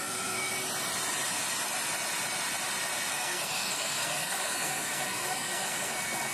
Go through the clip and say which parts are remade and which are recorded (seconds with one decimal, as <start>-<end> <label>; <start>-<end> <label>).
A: 0.0-0.5 remade; 0.5-3.1 recorded; 3.1-6.3 remade